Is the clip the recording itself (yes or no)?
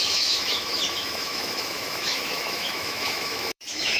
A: no